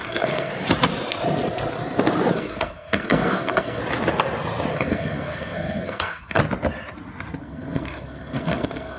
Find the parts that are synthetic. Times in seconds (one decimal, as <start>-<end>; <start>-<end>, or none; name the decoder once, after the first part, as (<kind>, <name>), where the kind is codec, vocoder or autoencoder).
0.0-0.5 (codec, SNAC); 2.3-3.8; 4.7-6.4; 7.4-9.0